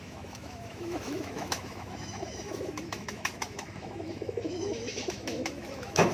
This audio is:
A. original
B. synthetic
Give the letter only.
B